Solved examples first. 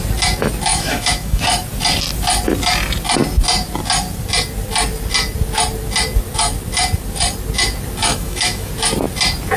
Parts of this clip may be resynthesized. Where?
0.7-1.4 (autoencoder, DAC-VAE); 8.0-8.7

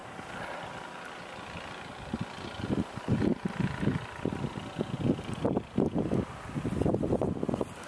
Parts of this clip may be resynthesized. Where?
none

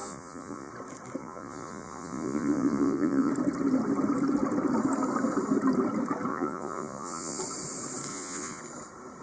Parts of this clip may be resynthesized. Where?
0.0-0.7 (vocoder, Vocos); 1.2-3.3; 6.3-7.4; 8.1-8.6

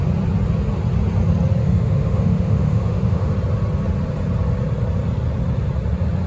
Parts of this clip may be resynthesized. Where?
1.6-3.3 (autoencoder, DAC-VAE)

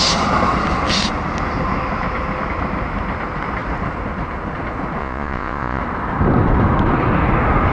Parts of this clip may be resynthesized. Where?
5.0-5.8 (vocoder, Vocos)

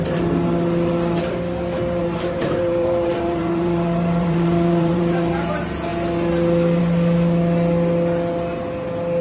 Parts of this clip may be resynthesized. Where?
2.0-5.3 (vocoder, BigVGAN v2)

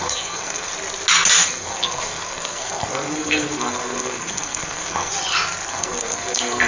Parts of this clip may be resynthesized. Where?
0.0-0.7 (codec, SNAC); 1.4-5.1; 5.7-6.7

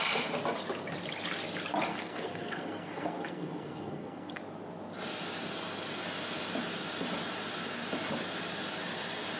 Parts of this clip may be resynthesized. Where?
1.9-4.4 (codec, SNAC)